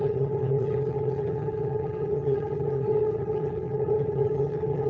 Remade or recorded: remade